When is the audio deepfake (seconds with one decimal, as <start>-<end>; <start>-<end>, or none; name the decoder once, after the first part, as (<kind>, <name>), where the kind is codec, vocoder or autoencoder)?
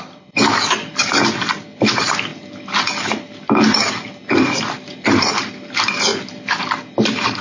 none